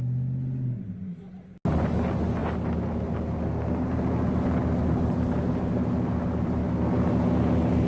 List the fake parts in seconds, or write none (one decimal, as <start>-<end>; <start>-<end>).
none